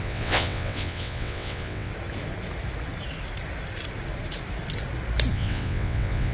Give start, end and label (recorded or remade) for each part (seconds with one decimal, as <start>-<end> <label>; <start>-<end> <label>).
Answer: 0.0-1.9 remade; 1.9-5.3 recorded; 5.3-6.3 remade